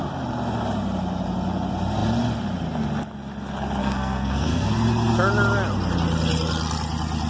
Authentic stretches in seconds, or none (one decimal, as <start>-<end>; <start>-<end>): 0.0-3.8; 4.7-7.3